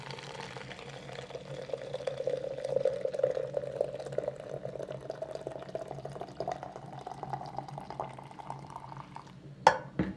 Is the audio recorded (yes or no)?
yes